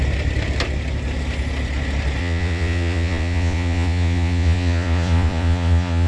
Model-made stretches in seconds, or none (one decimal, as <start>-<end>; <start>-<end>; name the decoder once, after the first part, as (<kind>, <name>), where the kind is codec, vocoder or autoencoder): 2.2-6.1 (vocoder, Vocos)

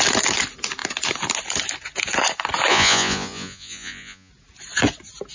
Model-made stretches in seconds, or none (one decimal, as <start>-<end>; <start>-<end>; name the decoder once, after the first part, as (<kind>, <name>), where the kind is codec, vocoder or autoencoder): 2.7-4.3 (vocoder, Vocos)

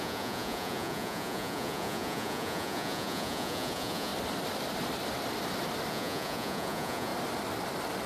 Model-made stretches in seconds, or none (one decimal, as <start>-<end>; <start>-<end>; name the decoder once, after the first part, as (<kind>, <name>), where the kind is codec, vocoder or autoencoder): 0.0-4.1 (vocoder, Vocos); 5.9-7.1

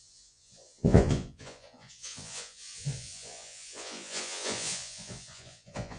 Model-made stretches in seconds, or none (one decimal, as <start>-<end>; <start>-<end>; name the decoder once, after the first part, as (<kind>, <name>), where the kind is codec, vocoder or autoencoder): 0.0-6.0 (vocoder, Vocos)

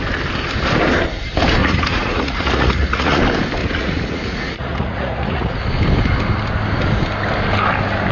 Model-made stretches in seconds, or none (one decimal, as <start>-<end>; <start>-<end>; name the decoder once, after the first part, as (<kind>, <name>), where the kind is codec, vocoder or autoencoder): 1.6-3.2 (vocoder, Vocos); 3.6-5.6

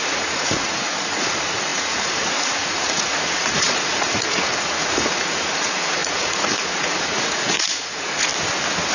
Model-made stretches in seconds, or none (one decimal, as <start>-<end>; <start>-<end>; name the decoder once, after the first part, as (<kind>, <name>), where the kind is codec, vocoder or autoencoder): 0.0-8.3 (vocoder, Vocos)